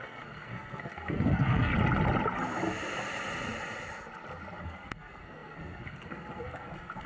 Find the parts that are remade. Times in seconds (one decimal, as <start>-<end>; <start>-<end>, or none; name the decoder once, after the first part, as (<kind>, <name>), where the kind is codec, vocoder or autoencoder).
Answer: 0.0-1.7 (codec, SNAC); 4.6-7.1